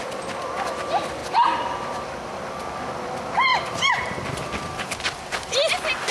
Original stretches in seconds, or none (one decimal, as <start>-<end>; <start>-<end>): 0.0-6.1